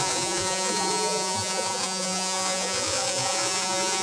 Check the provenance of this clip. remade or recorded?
remade